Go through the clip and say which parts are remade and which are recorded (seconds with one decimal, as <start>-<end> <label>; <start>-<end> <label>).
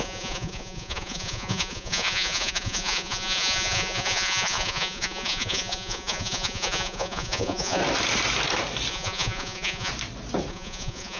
0.0-7.8 remade; 7.8-8.9 recorded; 8.9-9.9 remade; 9.9-10.5 recorded; 10.5-11.2 remade